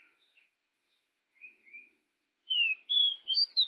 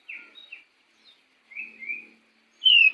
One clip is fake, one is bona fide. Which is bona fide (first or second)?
second